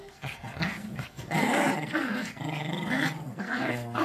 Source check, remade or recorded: remade